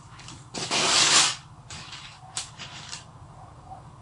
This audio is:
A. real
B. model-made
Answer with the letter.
B